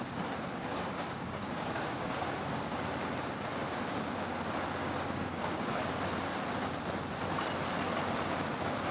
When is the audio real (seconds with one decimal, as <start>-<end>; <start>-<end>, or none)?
0.0-0.7; 2.9-4.8; 5.9-8.9